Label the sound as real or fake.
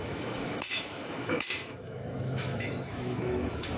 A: fake